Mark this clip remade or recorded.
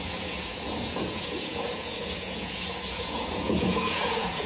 remade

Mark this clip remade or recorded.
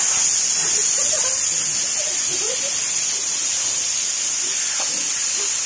recorded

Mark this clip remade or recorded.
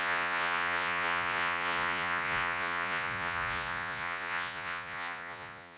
remade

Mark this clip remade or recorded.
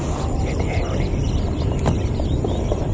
recorded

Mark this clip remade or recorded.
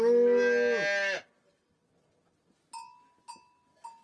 recorded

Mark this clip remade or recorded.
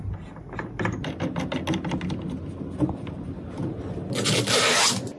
recorded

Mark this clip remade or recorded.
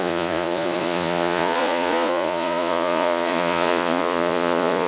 remade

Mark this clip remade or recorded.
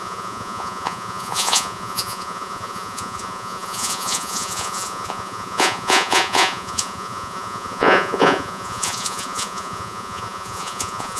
remade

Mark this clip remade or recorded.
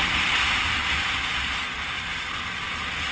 recorded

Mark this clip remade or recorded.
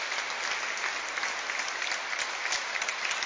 recorded